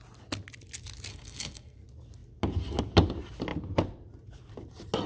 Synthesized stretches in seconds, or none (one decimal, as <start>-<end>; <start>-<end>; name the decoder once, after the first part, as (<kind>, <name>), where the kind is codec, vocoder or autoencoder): 1.1-1.8 (codec, SNAC)